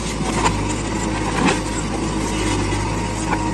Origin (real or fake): real